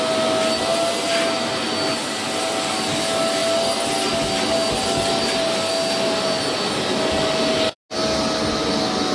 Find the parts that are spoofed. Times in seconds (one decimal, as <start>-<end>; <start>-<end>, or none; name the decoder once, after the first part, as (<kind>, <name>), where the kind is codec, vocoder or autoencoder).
none